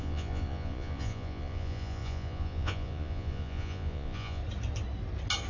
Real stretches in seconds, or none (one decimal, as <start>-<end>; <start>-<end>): 4.4-5.5